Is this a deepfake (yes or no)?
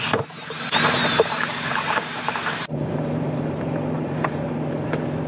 yes